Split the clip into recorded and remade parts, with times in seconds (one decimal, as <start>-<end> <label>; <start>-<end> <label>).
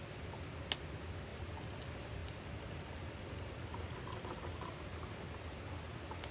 0.0-2.2 recorded; 2.2-4.4 remade; 4.4-4.9 recorded; 4.9-5.6 remade; 5.6-6.3 recorded